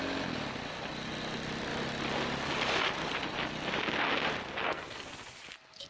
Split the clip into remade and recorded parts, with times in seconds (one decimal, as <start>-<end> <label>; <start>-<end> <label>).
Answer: 0.0-4.5 recorded; 4.5-5.1 remade; 5.1-5.9 recorded